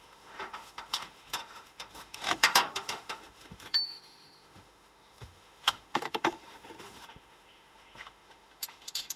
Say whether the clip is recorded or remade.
remade